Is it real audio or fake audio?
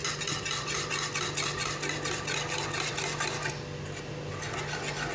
real